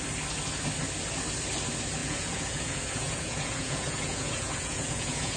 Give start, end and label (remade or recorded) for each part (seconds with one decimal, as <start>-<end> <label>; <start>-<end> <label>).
0.0-2.0 recorded; 2.0-5.4 remade